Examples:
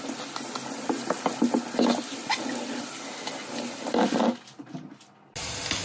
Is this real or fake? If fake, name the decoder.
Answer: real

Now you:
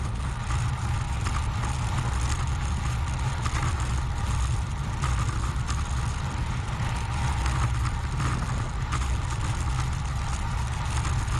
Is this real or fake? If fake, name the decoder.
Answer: real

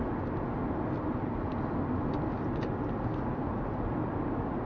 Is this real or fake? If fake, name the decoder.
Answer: real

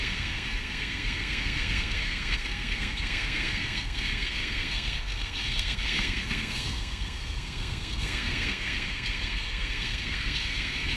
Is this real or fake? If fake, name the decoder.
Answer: fake, codec, SNAC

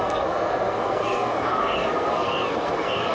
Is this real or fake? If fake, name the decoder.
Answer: fake, codec, SNAC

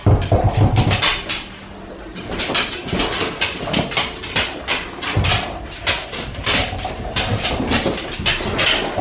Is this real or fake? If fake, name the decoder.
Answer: real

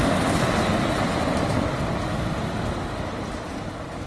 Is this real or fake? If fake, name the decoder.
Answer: real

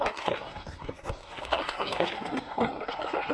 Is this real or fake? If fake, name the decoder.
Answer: fake, codec, SNAC